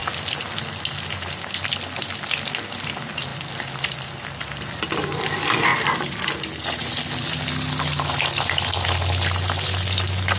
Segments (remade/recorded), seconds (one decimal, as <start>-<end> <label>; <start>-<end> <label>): 0.0-10.4 recorded